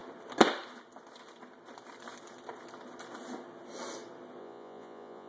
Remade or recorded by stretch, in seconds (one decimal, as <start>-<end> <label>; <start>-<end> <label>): 0.0-4.4 recorded; 4.4-5.3 remade